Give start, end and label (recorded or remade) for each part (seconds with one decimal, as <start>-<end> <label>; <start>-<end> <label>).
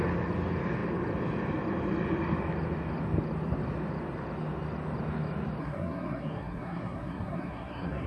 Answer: 0.0-5.6 recorded; 5.6-8.1 remade